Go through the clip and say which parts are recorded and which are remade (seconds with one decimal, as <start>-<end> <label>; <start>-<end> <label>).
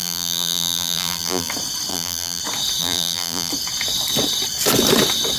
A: 0.0-1.5 remade; 1.5-1.9 recorded; 1.9-2.4 remade; 2.4-2.8 recorded; 2.8-3.5 remade; 3.5-5.4 recorded